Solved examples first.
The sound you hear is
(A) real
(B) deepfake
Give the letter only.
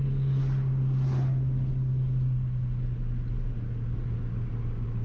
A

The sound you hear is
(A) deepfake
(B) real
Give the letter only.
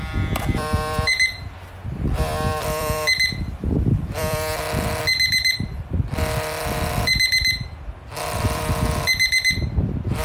A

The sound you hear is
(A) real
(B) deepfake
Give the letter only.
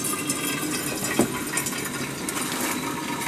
A